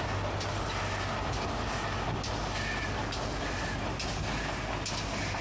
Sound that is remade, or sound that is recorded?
recorded